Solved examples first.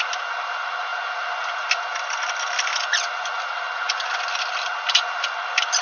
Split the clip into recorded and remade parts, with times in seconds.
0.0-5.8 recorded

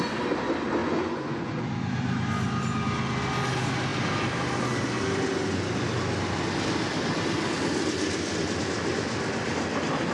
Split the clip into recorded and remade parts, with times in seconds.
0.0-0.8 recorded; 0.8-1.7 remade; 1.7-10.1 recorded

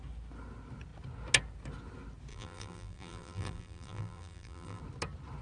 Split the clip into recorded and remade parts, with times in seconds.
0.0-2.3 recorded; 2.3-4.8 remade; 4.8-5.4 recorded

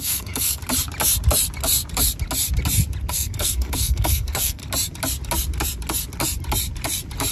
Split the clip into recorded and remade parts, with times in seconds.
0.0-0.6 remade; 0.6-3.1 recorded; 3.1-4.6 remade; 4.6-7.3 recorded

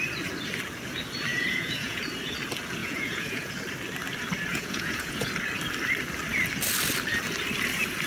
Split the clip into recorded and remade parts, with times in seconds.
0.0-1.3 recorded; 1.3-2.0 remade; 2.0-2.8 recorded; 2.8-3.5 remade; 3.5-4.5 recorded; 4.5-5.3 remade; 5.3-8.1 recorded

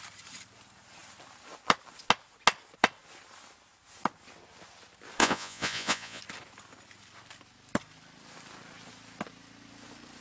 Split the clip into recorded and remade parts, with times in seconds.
0.0-5.2 recorded; 5.2-6.2 remade; 6.2-10.2 recorded

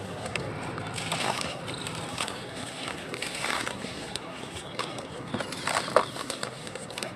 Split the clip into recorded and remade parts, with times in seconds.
0.0-0.5 remade; 0.5-1.2 recorded; 1.2-1.6 remade; 1.6-2.1 recorded; 2.1-5.3 remade; 5.3-6.1 recorded; 6.1-7.2 remade

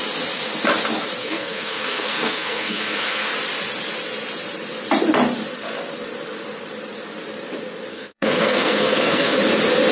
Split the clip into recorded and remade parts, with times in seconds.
0.0-1.2 recorded; 1.2-3.3 remade; 3.3-7.9 recorded; 7.9-9.4 remade; 9.4-9.9 recorded